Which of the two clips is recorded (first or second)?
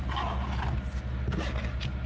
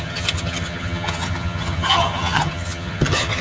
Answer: first